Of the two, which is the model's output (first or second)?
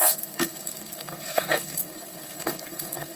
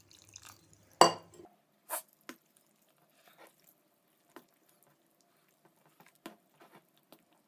first